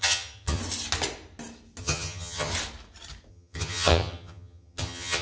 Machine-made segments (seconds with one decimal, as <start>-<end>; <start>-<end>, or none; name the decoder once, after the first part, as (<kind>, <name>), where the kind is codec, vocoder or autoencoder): 0.0-0.6 (vocoder, HiFi-GAN); 1.8-2.5; 3.3-5.2